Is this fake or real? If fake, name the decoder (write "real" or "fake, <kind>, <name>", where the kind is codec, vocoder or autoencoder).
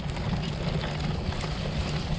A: real